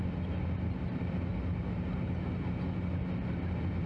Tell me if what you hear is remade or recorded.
recorded